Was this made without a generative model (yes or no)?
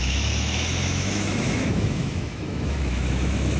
no